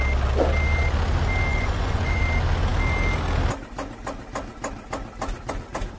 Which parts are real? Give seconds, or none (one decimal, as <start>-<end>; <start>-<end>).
0.0-1.5; 2.2-6.0